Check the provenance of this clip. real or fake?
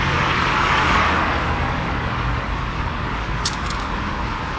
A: fake